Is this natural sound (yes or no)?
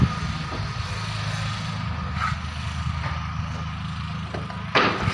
yes